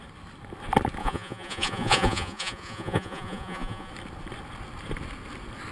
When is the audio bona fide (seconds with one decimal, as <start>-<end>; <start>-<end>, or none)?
0.0-1.0; 3.9-5.7